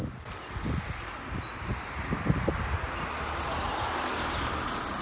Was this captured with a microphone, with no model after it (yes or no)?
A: yes